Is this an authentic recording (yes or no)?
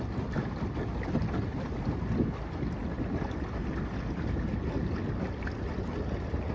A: yes